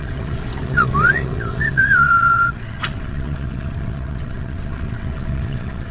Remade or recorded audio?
remade